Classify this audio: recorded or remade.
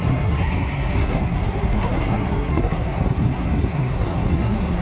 remade